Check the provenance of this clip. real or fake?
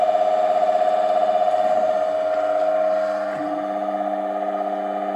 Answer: real